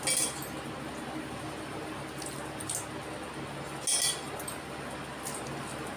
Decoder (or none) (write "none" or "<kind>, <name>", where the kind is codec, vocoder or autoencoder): none